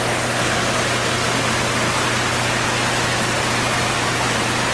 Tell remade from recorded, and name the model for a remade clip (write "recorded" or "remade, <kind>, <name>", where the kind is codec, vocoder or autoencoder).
recorded